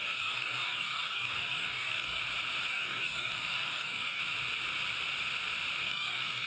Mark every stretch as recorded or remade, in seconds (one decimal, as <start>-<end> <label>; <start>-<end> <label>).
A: 0.0-2.2 remade; 2.2-2.7 recorded; 2.7-4.2 remade; 4.2-5.8 recorded; 5.8-6.5 remade